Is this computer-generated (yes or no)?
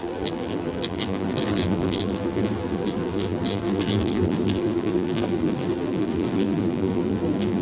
yes